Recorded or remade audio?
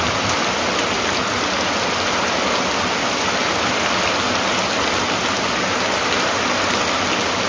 recorded